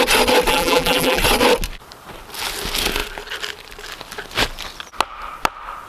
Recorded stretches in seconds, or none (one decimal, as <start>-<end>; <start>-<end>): 0.0-0.5; 1.2-5.9